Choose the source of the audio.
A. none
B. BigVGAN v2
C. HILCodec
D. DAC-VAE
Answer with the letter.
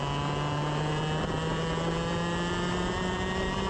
A